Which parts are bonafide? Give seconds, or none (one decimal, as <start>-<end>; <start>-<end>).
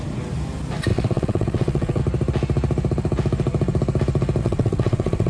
0.0-0.9; 2.0-4.4